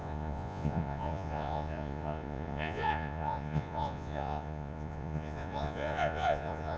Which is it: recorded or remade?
remade